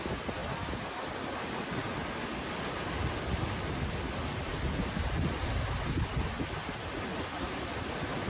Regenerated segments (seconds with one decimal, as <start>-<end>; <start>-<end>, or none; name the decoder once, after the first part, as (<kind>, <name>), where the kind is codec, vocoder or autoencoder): none